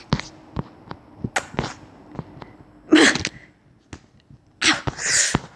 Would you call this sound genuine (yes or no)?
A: yes